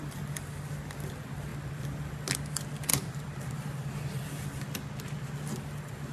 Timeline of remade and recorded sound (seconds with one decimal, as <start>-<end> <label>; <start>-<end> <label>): 0.0-2.9 recorded; 2.9-3.9 remade; 3.9-6.1 recorded